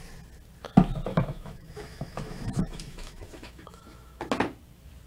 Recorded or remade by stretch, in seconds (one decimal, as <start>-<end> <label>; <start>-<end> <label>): 0.0-1.1 recorded; 1.1-4.2 remade; 4.2-5.1 recorded